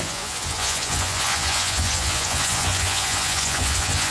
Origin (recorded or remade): remade